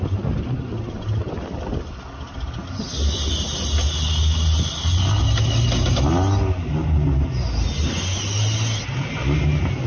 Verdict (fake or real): real